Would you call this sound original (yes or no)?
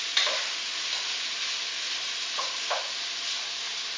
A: yes